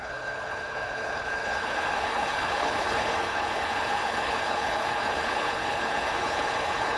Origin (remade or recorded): remade